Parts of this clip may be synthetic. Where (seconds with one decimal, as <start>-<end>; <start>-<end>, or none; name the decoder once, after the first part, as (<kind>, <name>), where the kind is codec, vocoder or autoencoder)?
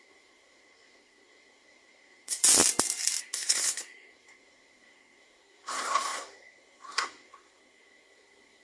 0.0-2.4 (codec, SNAC); 3.2-8.6